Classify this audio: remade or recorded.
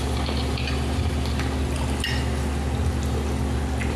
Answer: recorded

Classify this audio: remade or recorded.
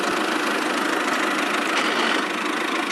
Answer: recorded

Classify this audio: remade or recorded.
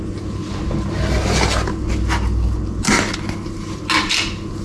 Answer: recorded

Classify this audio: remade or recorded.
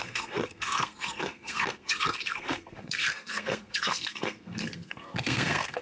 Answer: remade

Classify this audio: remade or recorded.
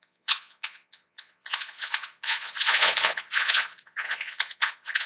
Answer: remade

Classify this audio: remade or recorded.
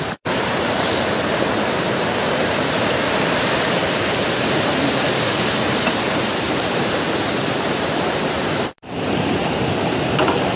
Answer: remade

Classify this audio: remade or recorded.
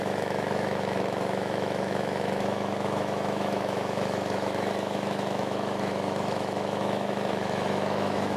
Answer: remade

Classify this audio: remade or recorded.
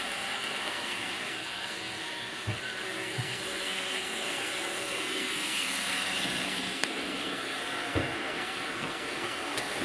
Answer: remade